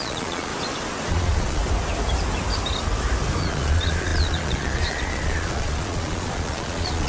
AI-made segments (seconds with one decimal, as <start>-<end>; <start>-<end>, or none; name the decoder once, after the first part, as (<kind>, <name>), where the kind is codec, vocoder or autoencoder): 0.0-0.5 (vocoder, Vocos); 1.1-1.6; 3.4-7.1